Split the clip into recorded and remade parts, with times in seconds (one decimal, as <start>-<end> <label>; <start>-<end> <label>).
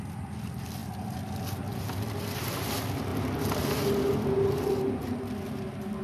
0.0-3.1 recorded; 3.1-3.6 remade; 3.6-6.0 recorded